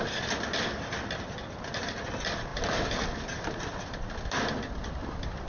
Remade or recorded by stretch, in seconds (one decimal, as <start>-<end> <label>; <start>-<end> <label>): 0.0-5.5 recorded